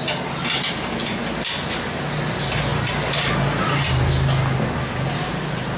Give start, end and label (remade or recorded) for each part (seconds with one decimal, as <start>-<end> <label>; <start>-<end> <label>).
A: 0.0-5.8 recorded